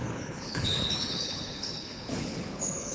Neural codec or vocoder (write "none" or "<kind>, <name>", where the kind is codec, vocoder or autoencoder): codec, HILCodec